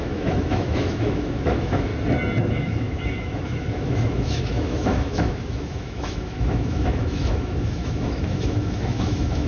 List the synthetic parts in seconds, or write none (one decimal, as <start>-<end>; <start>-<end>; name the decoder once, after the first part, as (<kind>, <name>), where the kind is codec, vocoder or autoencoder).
0.0-1.9 (autoencoder, DAC-VAE); 2.5-9.5